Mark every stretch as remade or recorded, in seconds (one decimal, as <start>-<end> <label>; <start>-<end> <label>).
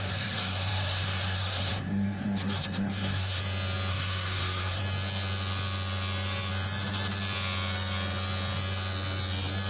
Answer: 0.0-3.4 remade; 3.4-3.9 recorded; 3.9-4.8 remade; 4.8-9.7 recorded